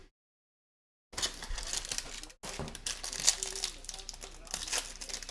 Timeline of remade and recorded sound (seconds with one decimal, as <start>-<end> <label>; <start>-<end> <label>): 0.0-5.3 recorded